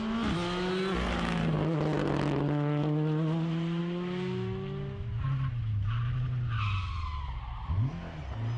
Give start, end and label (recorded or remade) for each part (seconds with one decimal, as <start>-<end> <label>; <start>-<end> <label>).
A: 0.0-8.6 recorded